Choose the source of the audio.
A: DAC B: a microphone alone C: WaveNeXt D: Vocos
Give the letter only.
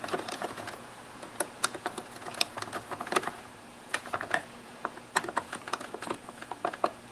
D